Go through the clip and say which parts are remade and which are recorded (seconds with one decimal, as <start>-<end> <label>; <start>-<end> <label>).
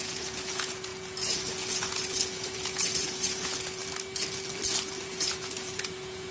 0.0-3.8 remade; 3.8-5.1 recorded; 5.1-6.3 remade